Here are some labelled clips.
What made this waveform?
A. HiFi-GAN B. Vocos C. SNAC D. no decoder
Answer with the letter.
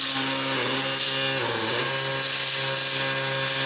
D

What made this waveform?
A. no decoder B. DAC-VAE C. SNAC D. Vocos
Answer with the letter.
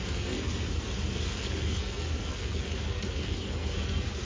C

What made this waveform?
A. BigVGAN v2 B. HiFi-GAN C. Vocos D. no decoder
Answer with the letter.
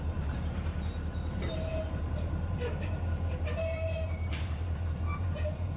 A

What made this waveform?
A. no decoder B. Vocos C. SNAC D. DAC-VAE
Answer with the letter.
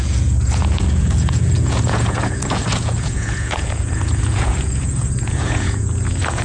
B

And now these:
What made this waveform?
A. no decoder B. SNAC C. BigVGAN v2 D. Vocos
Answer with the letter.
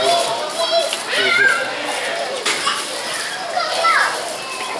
C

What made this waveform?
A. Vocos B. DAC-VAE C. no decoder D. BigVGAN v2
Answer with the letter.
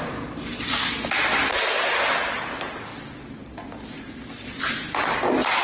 C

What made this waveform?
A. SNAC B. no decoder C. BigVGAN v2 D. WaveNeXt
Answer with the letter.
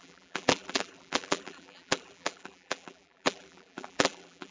C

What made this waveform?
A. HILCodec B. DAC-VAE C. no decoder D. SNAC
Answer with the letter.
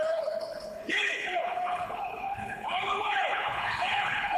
A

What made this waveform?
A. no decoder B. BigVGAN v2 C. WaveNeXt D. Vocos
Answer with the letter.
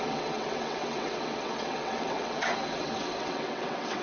C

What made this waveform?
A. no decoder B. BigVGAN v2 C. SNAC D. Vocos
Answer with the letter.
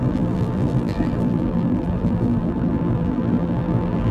B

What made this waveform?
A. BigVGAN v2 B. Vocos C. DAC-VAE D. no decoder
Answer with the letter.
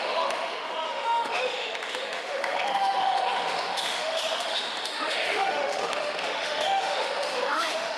C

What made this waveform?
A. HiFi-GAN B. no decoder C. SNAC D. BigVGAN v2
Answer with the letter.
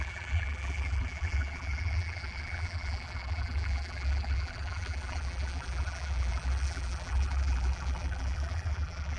D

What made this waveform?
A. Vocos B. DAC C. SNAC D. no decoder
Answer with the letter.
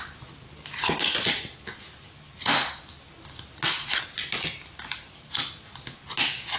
D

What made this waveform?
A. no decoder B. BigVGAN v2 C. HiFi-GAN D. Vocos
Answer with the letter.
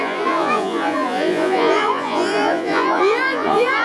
D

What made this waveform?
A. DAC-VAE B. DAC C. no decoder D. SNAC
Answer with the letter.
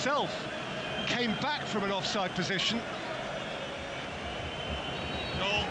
C